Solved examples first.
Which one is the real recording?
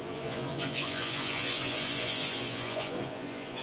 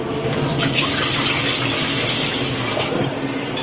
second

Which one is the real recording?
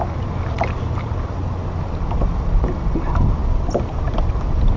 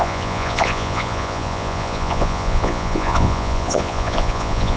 first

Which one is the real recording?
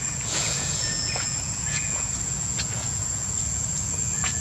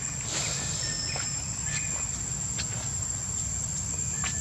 second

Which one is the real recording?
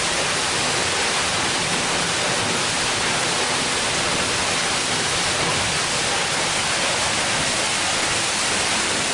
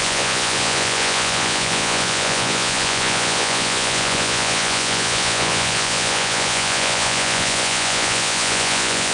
first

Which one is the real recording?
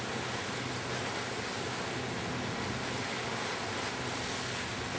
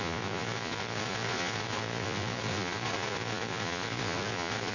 first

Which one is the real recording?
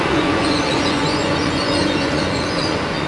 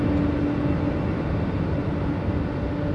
second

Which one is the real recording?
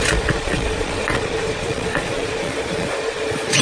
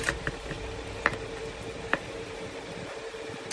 second